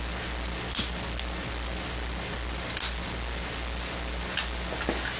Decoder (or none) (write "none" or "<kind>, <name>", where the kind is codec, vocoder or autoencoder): none